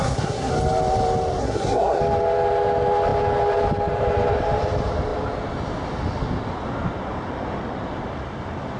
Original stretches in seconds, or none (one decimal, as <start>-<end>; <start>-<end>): 0.5-1.4; 2.0-8.8